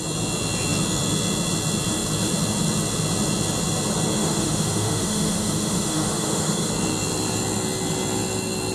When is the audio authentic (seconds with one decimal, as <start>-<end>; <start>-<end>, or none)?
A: 0.0-4.2; 6.7-8.7